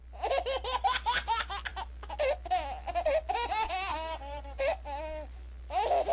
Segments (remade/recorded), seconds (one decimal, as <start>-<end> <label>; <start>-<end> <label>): 0.0-3.9 recorded; 3.9-4.6 remade; 4.6-6.1 recorded